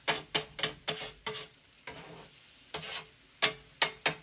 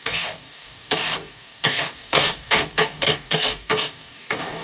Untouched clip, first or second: first